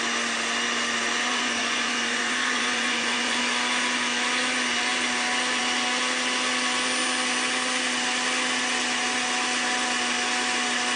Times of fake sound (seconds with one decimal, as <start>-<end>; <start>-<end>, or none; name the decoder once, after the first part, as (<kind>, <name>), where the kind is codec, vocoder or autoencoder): 1.3-3.4 (vocoder, Vocos)